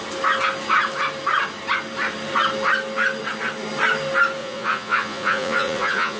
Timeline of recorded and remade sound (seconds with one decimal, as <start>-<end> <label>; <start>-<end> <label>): 0.0-4.4 recorded; 4.4-6.2 remade